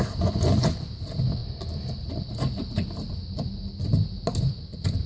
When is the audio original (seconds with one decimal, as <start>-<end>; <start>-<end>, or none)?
0.0-1.4; 4.5-5.1